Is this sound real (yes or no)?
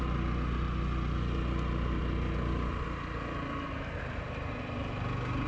yes